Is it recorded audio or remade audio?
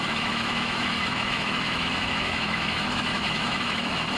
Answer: remade